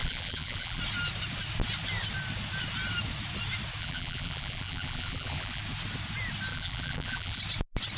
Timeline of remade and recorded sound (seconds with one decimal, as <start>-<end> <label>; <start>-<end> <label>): 0.0-0.8 remade; 0.8-3.8 recorded; 3.8-5.6 remade; 5.6-6.5 recorded; 6.5-7.4 remade; 7.4-8.0 recorded